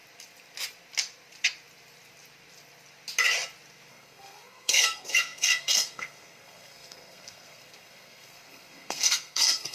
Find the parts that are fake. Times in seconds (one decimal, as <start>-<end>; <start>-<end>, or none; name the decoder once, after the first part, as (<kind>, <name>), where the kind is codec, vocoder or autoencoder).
3.9-9.7 (codec, SNAC)